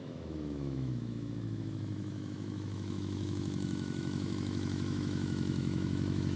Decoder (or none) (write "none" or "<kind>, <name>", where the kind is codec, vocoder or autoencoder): autoencoder, DAC-VAE